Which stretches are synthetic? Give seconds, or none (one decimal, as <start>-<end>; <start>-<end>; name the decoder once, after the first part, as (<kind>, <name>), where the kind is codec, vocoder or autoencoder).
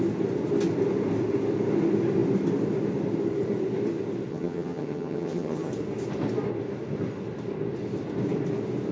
4.3-5.7 (vocoder, HiFi-GAN)